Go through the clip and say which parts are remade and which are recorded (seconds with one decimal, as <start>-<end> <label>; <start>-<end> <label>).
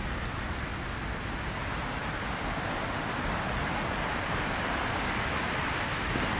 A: 0.0-6.4 recorded